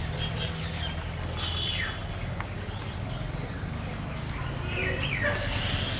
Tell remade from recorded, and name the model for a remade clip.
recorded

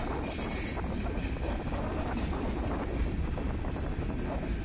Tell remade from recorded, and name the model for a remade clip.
recorded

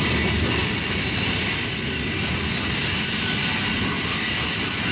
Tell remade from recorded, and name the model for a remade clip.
recorded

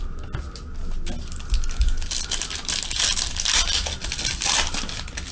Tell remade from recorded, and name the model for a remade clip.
recorded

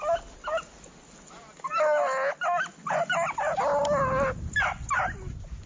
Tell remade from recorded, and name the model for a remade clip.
recorded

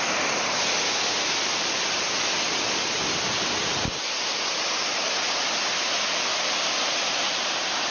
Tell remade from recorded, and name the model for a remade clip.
recorded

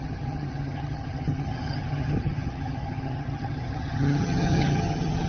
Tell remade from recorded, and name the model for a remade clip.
remade, vocoder, HiFi-GAN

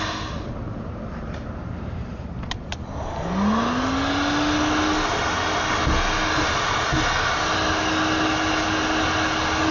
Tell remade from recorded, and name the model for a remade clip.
recorded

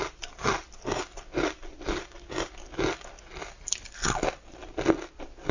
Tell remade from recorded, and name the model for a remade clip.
recorded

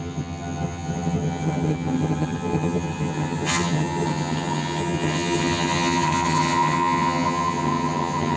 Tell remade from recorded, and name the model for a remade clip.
remade, vocoder, HiFi-GAN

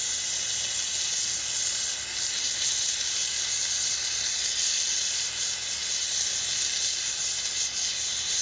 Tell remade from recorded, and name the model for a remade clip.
recorded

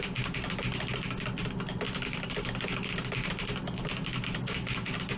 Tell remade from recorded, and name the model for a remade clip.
recorded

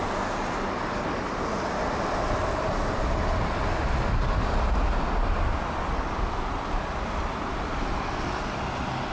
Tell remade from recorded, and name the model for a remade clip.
recorded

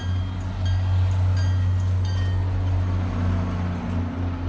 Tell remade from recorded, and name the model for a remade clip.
recorded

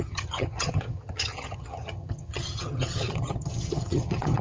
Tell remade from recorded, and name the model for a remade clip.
remade, vocoder, HiFi-GAN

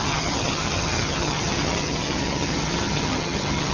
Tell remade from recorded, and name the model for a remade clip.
remade, vocoder, HiFi-GAN